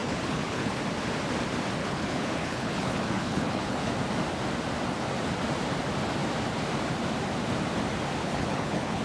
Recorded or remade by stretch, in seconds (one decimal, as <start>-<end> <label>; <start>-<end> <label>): 0.0-0.8 remade; 0.8-1.8 recorded; 1.8-3.9 remade; 3.9-8.2 recorded; 8.2-9.0 remade